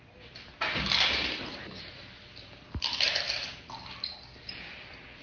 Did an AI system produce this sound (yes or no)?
no